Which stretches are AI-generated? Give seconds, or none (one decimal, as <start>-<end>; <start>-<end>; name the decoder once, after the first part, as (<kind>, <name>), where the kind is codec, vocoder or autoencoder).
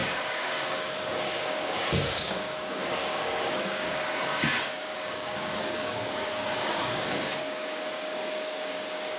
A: 0.0-9.2 (codec, DAC)